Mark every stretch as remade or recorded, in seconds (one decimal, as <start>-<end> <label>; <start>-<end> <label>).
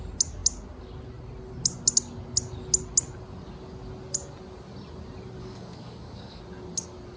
0.0-5.4 recorded; 5.4-6.4 remade; 6.4-7.2 recorded